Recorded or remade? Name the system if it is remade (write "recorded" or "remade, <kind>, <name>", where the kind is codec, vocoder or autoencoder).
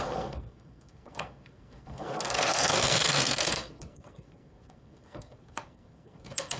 remade, codec, SNAC